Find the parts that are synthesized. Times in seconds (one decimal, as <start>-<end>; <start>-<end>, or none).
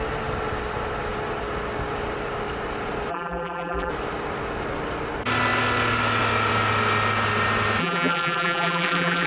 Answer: 3.1-3.9; 7.8-9.3